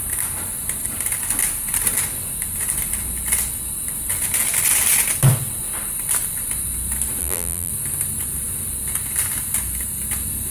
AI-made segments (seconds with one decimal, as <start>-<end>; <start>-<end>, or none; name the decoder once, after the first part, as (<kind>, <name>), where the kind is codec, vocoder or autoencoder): 7.2-7.7 (vocoder, BigVGAN v2)